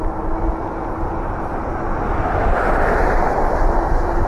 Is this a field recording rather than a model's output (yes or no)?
yes